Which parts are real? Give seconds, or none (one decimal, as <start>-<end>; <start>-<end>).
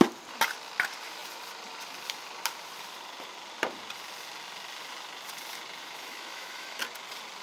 0.0-5.8; 6.8-7.4